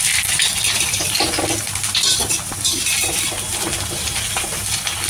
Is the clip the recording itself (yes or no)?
yes